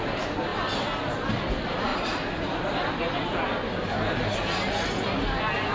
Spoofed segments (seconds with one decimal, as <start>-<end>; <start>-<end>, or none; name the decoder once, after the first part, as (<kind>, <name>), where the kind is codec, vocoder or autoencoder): none